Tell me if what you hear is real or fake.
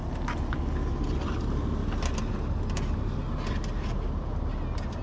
real